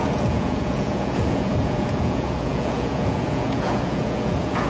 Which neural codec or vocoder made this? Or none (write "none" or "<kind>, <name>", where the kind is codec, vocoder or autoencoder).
vocoder, Vocos